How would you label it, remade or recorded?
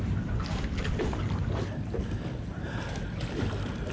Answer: recorded